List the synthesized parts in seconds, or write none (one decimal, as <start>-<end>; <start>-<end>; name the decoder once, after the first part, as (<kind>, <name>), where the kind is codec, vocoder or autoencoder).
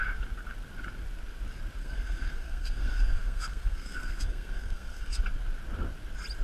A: 1.8-5.2 (codec, SNAC)